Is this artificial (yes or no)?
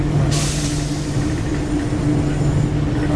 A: no